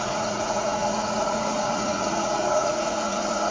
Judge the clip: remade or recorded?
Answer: remade